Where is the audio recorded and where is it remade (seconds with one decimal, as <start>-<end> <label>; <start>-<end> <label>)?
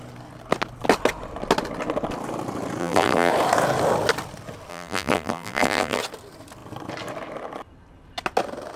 0.0-2.8 recorded; 2.8-3.3 remade; 3.3-4.7 recorded; 4.7-6.0 remade; 6.0-8.8 recorded